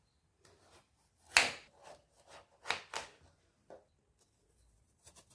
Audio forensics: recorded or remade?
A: recorded